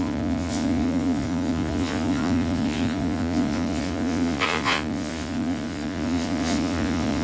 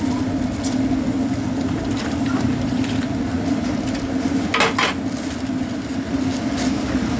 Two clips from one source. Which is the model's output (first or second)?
first